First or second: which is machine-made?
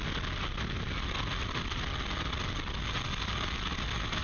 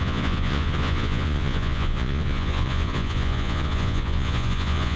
second